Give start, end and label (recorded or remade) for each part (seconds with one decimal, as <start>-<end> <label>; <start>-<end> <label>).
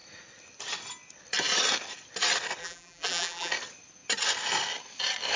0.0-2.6 recorded; 2.6-3.5 remade; 3.5-5.4 recorded